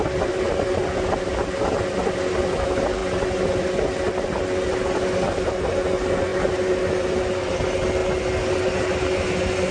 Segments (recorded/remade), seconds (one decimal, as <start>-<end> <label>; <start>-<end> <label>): 0.0-9.7 recorded